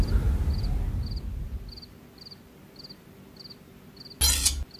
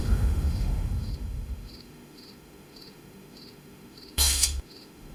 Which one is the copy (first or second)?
second